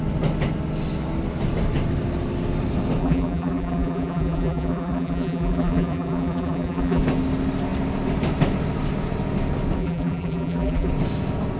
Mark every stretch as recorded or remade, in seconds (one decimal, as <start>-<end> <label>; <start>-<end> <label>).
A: 0.0-3.0 recorded; 3.0-7.0 remade; 7.0-9.8 recorded; 9.8-10.9 remade; 10.9-11.6 recorded